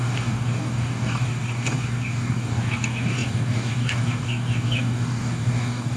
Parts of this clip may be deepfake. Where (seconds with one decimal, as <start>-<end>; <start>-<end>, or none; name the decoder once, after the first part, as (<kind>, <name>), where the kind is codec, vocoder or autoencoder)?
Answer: 0.0-6.0 (codec, DAC)